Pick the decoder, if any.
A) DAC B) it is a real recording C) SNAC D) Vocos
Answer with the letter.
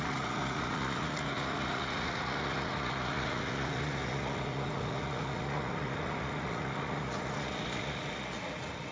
D